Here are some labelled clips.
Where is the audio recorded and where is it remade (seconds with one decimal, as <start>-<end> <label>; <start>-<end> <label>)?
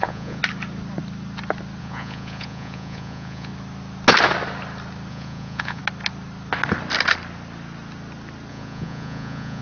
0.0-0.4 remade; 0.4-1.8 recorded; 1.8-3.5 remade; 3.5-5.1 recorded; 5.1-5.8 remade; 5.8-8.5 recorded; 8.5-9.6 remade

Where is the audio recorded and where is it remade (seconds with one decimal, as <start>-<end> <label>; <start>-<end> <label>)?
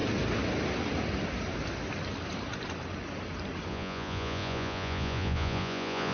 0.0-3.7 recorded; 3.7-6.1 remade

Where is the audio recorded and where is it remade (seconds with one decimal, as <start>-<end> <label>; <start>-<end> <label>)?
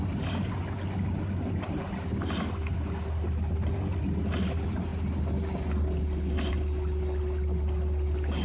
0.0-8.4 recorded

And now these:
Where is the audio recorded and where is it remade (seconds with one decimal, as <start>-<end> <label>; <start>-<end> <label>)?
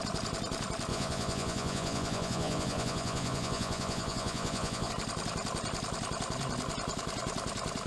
0.0-0.9 recorded; 0.9-4.9 remade; 4.9-7.9 recorded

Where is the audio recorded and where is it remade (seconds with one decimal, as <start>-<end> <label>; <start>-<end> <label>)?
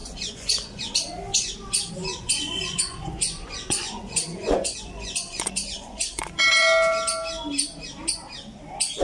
0.0-0.8 remade; 0.8-2.0 recorded; 2.0-6.4 remade; 6.4-9.0 recorded